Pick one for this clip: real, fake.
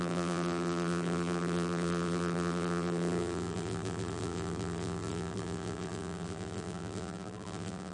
fake